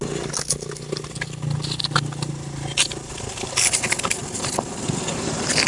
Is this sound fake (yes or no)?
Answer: no